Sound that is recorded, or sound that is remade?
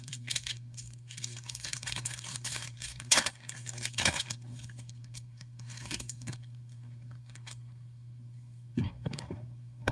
remade